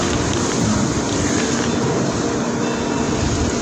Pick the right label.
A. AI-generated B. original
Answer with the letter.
B